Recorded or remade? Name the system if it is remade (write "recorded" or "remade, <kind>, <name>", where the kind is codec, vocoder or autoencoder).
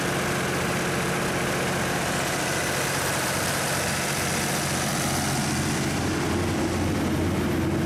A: recorded